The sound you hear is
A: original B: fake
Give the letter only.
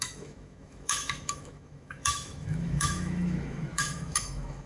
B